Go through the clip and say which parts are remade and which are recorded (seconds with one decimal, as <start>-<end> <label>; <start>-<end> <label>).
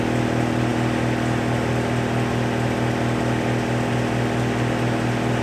0.0-5.4 recorded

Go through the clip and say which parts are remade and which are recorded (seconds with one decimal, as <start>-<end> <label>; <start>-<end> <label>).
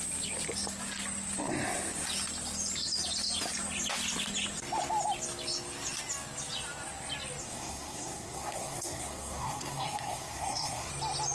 0.0-7.4 recorded; 7.4-10.9 remade; 10.9-11.3 recorded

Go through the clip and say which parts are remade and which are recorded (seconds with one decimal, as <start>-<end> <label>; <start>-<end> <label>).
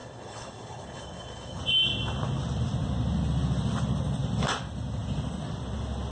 0.0-1.6 remade; 1.6-6.1 recorded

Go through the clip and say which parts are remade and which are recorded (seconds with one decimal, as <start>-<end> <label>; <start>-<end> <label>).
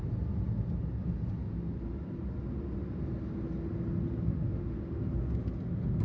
0.0-4.3 recorded; 4.3-5.0 remade; 5.0-6.0 recorded